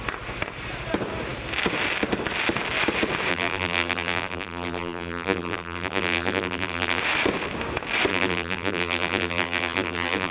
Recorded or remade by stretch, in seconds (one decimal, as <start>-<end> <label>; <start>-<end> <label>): 0.0-3.3 recorded; 3.3-7.0 remade; 7.0-8.1 recorded; 8.1-10.3 remade